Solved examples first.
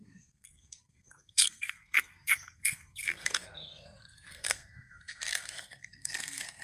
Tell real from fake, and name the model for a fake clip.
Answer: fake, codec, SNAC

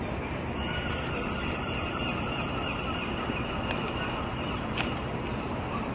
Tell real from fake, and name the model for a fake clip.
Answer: real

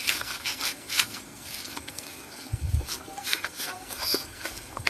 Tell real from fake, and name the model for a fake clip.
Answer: fake, codec, SNAC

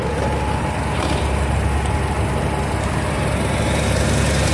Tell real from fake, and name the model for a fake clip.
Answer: real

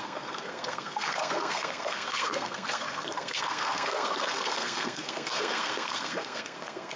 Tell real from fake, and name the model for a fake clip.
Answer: fake, codec, SNAC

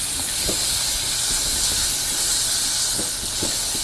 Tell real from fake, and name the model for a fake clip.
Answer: real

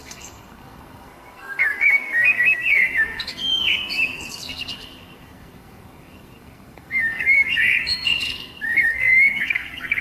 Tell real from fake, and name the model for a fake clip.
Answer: fake, codec, SNAC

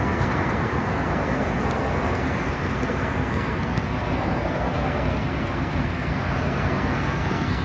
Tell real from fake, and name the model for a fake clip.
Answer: fake, codec, SNAC